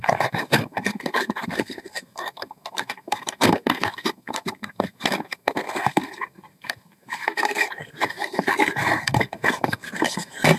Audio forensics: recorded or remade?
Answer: remade